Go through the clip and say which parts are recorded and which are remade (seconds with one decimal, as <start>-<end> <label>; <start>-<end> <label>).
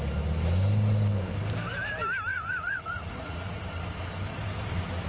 0.0-2.3 recorded; 2.3-3.5 remade; 3.5-5.1 recorded